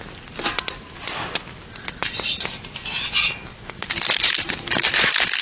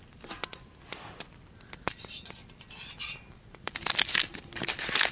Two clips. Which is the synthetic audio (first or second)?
second